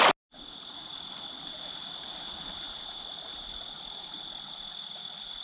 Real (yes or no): yes